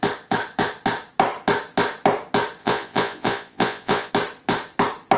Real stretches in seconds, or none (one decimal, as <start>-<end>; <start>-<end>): 0.0-2.6; 4.1-5.2